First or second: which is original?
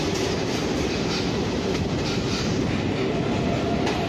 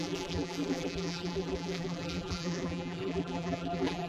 first